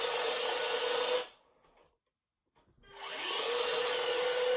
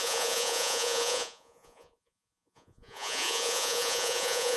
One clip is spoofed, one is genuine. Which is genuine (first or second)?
first